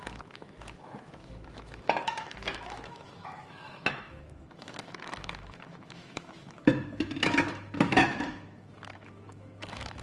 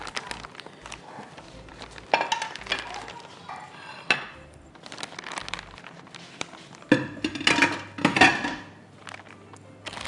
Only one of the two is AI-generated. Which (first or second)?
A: first